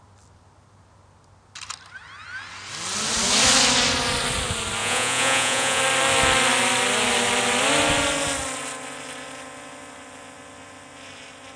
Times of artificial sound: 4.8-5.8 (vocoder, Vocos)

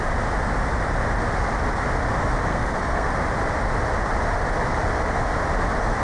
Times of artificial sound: 2.5-3.1 (codec, SNAC)

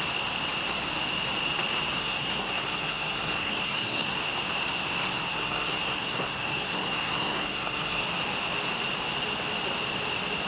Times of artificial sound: 2.0-4.2 (codec, SNAC); 5.3-8.0